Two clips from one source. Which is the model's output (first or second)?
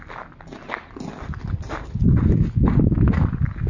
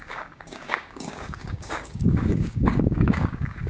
second